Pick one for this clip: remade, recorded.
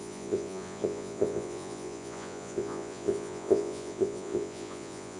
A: remade